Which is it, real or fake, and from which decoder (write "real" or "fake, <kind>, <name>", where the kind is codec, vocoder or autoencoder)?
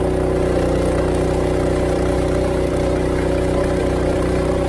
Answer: real